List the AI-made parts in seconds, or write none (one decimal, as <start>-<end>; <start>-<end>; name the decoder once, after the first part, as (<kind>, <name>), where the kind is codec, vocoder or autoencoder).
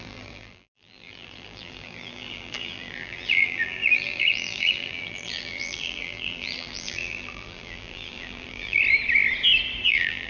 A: 0.0-8.8 (vocoder, BigVGAN v2); 9.9-10.3